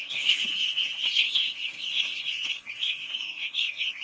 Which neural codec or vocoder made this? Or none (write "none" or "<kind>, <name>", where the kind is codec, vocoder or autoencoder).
codec, SNAC